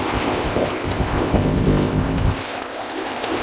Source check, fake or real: fake